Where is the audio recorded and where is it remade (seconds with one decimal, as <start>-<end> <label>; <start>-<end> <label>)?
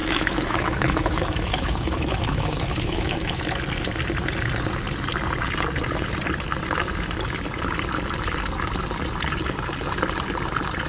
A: 0.0-3.4 remade; 3.4-10.9 recorded